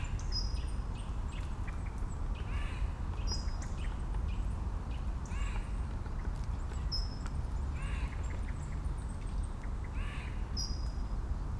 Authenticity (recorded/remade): recorded